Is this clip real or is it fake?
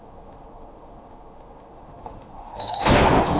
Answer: fake